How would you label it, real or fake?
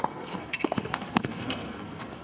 fake